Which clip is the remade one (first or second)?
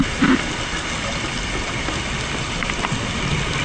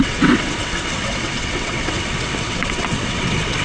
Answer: second